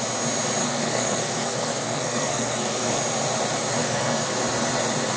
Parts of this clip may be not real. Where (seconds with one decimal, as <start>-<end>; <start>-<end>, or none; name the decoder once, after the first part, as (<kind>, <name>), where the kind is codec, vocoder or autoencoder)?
0.6-3.0 (codec, SNAC); 3.8-4.3